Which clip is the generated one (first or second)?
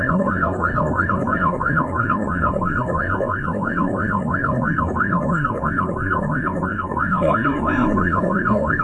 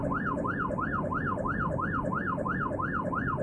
first